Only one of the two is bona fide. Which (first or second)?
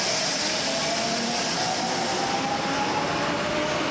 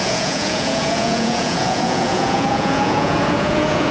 first